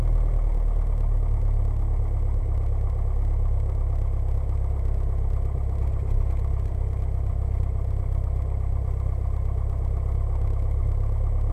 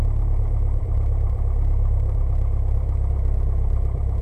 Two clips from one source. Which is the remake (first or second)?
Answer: second